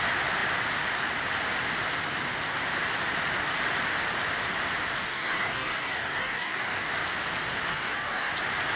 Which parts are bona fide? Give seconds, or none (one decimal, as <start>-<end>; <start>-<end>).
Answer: 0.0-5.0; 6.9-7.7; 8.3-8.8